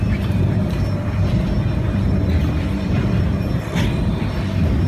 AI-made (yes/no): yes